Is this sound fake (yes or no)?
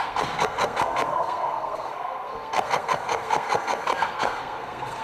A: yes